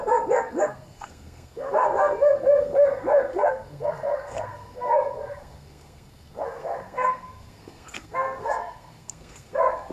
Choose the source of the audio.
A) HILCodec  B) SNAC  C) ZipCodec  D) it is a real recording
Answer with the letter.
B